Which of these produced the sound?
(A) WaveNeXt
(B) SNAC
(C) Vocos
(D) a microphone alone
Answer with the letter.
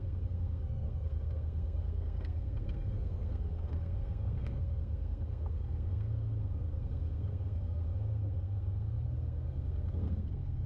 B